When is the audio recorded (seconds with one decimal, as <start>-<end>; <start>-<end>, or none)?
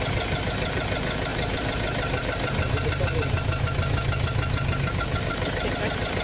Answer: 0.0-6.2